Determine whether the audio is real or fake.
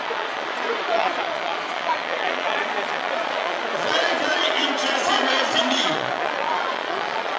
fake